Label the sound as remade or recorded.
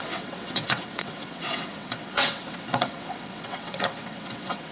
remade